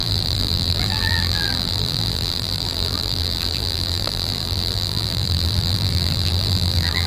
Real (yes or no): no